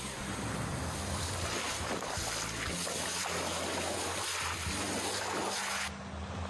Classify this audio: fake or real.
real